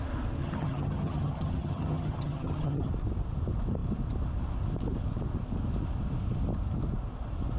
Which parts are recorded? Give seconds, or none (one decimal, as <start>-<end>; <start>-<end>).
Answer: 0.0-0.4; 2.9-7.6